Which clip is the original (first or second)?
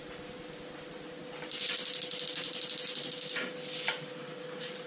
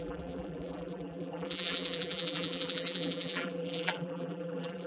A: first